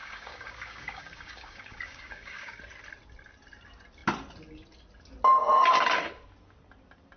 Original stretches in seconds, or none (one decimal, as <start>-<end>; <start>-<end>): 2.6-7.2